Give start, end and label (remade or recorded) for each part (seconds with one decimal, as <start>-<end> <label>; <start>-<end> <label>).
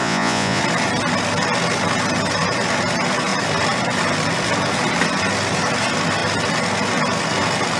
0.0-0.6 remade; 0.6-7.8 recorded